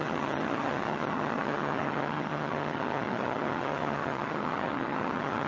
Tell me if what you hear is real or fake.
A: fake